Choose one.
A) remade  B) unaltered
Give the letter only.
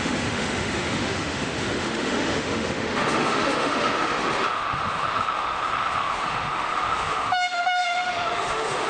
A